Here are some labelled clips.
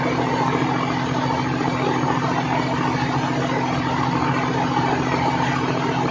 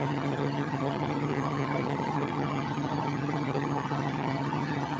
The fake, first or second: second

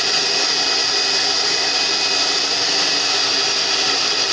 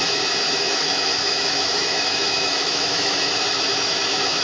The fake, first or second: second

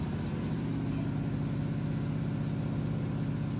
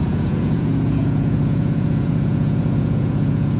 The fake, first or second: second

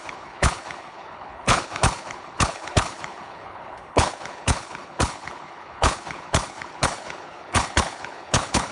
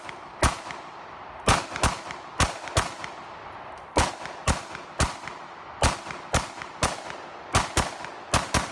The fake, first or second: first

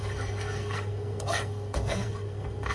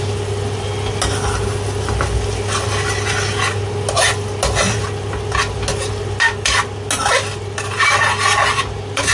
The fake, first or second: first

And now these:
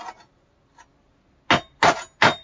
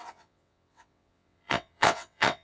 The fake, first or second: second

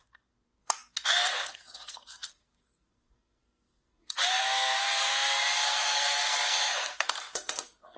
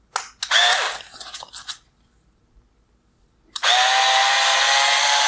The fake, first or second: first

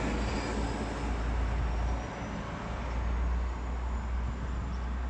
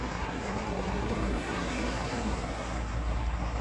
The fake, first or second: second